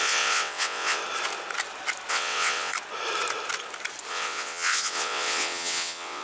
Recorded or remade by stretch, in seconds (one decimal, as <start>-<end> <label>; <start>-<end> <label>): 0.0-1.0 remade; 1.0-2.1 recorded; 2.1-2.7 remade; 2.7-4.1 recorded; 4.1-6.2 remade